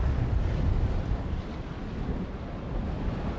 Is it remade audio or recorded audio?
remade